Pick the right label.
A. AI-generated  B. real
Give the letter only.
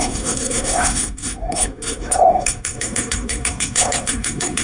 A